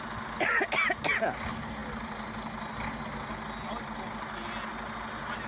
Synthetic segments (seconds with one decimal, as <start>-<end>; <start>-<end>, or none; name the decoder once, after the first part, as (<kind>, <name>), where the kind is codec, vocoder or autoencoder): none